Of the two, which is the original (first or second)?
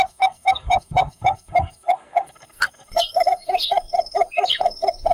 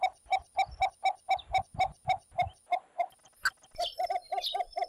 second